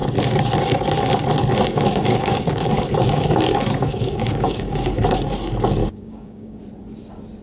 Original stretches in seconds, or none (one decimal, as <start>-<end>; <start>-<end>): 0.0-1.7; 5.0-5.8; 6.6-7.4